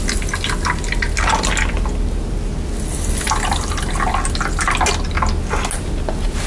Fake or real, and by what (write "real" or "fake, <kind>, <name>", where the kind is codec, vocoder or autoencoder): real